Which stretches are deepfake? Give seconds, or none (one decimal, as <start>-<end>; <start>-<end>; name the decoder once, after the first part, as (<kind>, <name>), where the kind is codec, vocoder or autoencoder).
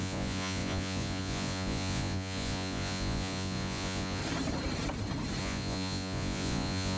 0.0-4.2 (vocoder, Vocos); 5.4-7.0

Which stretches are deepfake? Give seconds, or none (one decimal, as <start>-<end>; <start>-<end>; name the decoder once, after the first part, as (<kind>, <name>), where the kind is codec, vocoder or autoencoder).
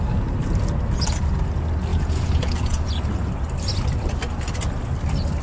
1.9-3.0 (vocoder, Vocos)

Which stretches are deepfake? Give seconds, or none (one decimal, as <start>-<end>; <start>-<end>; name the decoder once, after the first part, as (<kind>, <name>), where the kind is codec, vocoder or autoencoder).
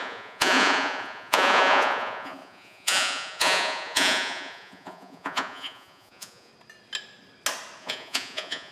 0.0-6.5 (vocoder, Vocos); 7.8-8.7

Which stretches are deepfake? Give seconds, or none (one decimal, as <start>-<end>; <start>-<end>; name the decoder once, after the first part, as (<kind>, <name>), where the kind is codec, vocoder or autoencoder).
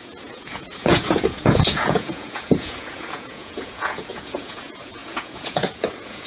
0.0-6.3 (vocoder, Vocos)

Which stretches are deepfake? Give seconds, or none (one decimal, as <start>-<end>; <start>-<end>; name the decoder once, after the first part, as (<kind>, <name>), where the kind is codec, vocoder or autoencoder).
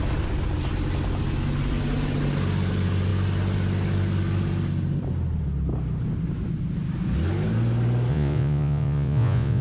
8.1-9.6 (vocoder, Vocos)